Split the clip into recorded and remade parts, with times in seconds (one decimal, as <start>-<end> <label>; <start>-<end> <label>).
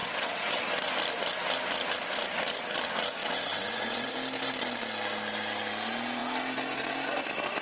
0.0-0.9 remade; 0.9-3.2 recorded; 3.2-4.1 remade; 4.1-7.6 recorded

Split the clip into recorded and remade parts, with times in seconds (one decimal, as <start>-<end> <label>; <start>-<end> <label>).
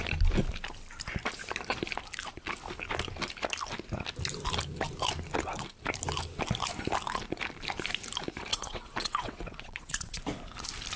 0.0-8.5 recorded; 8.5-10.2 remade; 10.2-11.0 recorded